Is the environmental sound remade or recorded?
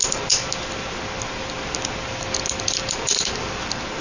recorded